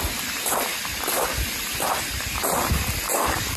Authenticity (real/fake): real